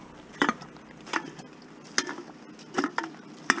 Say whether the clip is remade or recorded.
recorded